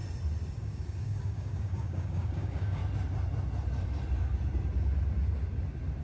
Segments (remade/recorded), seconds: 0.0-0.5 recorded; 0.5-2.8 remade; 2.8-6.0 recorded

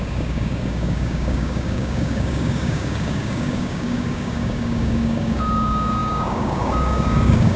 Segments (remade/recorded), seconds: 0.0-7.6 remade

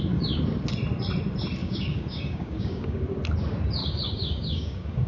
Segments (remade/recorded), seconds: 0.0-1.6 recorded; 1.6-3.0 remade; 3.0-3.8 recorded; 3.8-5.1 remade

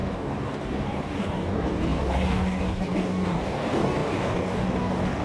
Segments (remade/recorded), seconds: 0.0-5.2 remade

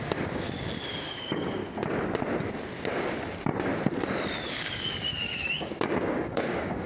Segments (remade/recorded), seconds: 0.0-1.6 remade; 1.6-4.5 recorded; 4.5-6.9 remade